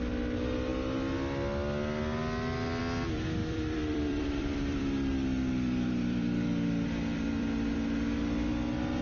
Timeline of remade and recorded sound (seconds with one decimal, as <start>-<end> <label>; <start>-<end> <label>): 0.0-3.4 recorded; 3.4-8.5 remade; 8.5-9.0 recorded

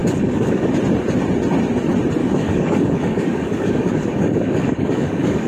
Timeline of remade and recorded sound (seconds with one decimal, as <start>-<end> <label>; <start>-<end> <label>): 0.0-0.7 remade; 0.7-2.2 recorded; 2.2-5.5 remade

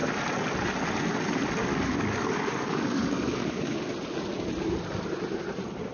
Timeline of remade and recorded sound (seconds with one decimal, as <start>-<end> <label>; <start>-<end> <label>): 0.0-1.7 recorded; 1.7-3.9 remade; 3.9-5.9 recorded

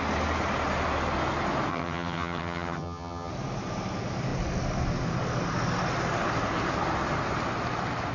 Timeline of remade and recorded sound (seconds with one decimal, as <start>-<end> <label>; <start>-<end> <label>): 0.0-1.7 recorded; 1.7-3.3 remade; 3.3-8.1 recorded

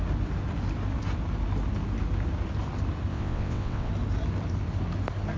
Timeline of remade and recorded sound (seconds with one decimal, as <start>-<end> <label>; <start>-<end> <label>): 0.0-3.1 recorded; 3.1-3.9 remade; 3.9-5.4 recorded

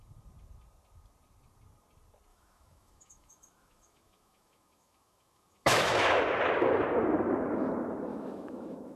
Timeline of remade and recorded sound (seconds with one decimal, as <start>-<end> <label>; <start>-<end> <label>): 0.0-2.3 recorded; 2.3-6.2 remade; 6.2-8.1 recorded; 8.1-9.0 remade

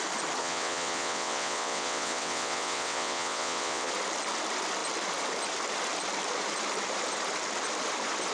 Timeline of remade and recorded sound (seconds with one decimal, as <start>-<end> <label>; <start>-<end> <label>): 0.0-0.4 recorded; 0.4-3.9 remade; 3.9-8.3 recorded

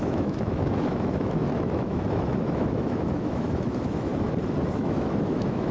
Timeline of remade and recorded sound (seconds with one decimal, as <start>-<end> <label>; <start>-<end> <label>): 0.0-4.1 remade; 4.1-4.7 recorded; 4.7-5.7 remade